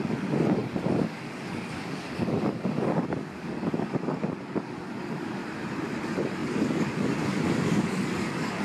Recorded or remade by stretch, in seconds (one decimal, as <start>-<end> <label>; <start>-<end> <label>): 0.0-5.4 remade; 5.4-6.0 recorded; 6.0-8.6 remade